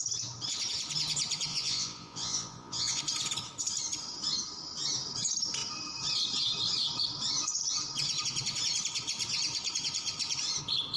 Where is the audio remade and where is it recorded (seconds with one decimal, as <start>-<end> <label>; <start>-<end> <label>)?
0.0-1.5 recorded; 1.5-3.0 remade; 3.0-11.0 recorded